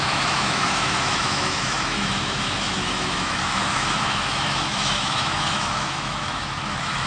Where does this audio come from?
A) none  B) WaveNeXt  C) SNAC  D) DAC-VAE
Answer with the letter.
D